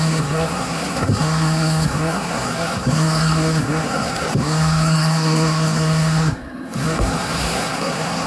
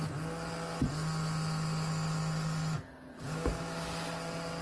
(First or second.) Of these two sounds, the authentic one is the second